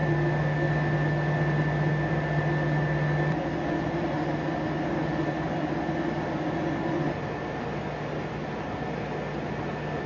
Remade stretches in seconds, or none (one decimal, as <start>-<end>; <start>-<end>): none